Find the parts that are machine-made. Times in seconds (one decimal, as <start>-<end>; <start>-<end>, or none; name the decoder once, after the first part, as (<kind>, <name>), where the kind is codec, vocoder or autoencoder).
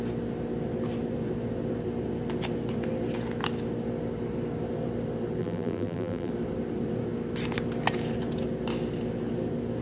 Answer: 5.4-6.3 (vocoder, BigVGAN v2)